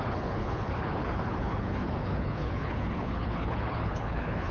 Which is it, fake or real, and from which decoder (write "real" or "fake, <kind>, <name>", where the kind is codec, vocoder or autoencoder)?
fake, codec, HILCodec